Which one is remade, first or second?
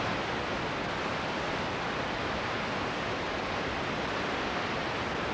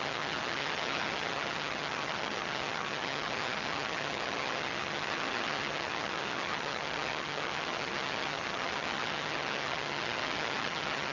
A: second